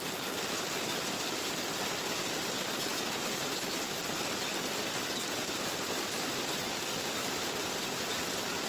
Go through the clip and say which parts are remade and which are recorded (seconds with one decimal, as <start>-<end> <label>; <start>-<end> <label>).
0.0-8.7 recorded